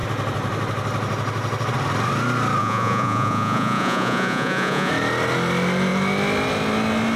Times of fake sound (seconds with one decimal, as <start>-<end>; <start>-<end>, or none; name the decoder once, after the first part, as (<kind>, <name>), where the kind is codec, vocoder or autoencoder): 2.6-4.9 (vocoder, Vocos)

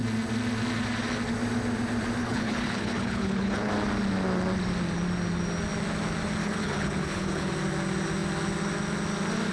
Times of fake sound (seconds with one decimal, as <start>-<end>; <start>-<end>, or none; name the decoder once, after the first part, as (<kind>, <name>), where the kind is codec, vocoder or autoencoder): 2.2-3.7 (codec, HILCodec); 6.4-7.5

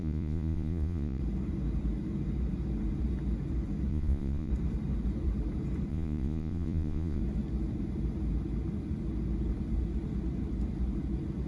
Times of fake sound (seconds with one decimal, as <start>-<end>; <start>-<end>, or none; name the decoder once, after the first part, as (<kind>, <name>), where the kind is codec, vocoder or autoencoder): 0.0-1.2 (vocoder, Vocos); 3.9-4.5; 5.9-7.2

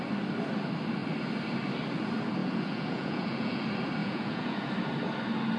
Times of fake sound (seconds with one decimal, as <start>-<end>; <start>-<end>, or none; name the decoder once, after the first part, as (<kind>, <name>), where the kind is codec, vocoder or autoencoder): 2.4-3.6 (vocoder, Vocos); 4.0-4.7

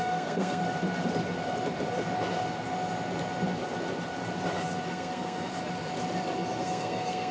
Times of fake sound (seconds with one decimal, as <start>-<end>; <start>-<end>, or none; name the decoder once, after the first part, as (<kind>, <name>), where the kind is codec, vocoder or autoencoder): 0.0-0.6 (codec, SNAC); 4.9-5.5; 6.6-7.3